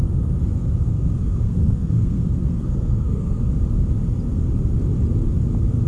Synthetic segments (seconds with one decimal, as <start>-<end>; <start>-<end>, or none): 0.5-3.5